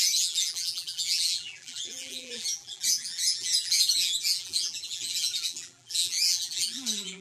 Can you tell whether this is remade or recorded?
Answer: remade